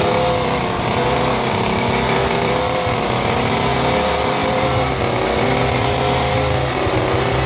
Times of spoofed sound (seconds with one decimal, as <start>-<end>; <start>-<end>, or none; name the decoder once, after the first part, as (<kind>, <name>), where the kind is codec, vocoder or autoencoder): 1.3-1.9 (codec, DAC)